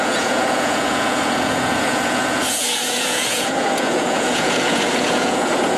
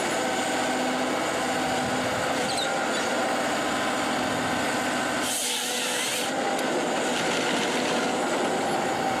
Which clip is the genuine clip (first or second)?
second